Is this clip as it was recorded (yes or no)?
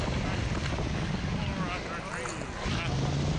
yes